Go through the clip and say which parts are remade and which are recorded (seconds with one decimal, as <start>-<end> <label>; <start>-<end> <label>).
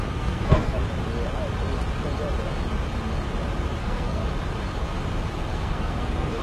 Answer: 0.0-0.8 remade; 0.8-3.8 recorded; 3.8-4.2 remade; 4.2-5.5 recorded; 5.5-6.4 remade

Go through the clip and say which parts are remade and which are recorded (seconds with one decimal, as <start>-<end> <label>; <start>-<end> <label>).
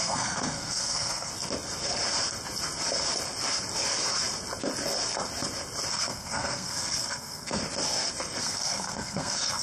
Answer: 0.0-1.3 remade; 1.3-5.9 recorded; 5.9-7.6 remade; 7.6-8.4 recorded; 8.4-9.6 remade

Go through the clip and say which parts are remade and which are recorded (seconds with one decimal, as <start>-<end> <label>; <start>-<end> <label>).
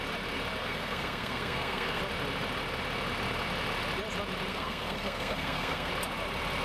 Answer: 0.0-0.6 recorded; 0.6-2.0 remade; 2.0-4.5 recorded; 4.5-5.9 remade; 5.9-6.6 recorded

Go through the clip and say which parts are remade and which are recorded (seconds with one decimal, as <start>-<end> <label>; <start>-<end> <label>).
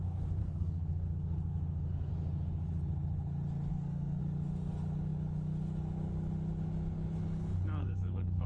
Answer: 0.0-0.4 recorded; 0.4-2.1 remade; 2.1-3.7 recorded; 3.7-4.2 remade; 4.2-7.8 recorded; 7.8-8.5 remade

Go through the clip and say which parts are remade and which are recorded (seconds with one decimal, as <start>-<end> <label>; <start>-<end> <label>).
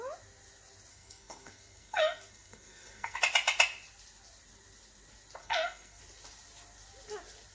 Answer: 0.0-0.9 recorded; 0.9-3.2 remade; 3.2-5.4 recorded; 5.4-6.0 remade; 6.0-7.5 recorded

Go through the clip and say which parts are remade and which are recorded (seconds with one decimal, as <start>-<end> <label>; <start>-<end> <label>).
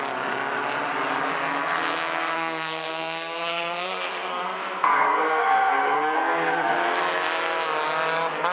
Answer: 0.0-2.2 recorded; 2.2-7.0 remade; 7.0-8.5 recorded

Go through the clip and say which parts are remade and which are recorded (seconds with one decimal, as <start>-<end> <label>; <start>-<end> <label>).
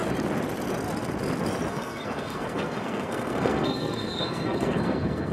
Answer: 0.0-1.7 recorded; 1.7-5.3 remade